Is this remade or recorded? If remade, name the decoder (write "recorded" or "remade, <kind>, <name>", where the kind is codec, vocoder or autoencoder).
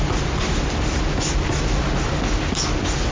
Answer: recorded